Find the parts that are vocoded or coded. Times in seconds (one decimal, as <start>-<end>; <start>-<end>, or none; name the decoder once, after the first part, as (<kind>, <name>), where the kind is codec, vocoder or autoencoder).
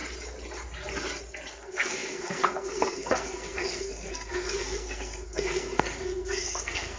1.5-7.0 (codec, SNAC)